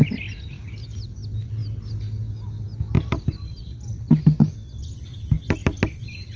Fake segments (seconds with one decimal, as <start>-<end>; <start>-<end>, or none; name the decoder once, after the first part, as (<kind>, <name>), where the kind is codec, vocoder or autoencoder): none